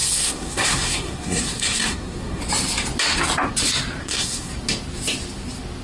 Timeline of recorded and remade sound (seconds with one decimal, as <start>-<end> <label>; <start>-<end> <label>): 0.0-2.4 remade; 2.4-4.0 recorded; 4.0-4.5 remade; 4.5-5.8 recorded